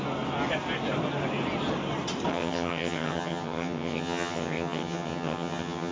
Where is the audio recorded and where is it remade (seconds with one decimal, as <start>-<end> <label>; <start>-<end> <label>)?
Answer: 0.0-2.3 recorded; 2.3-5.9 remade